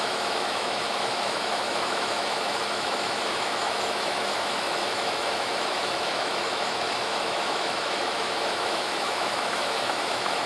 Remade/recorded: remade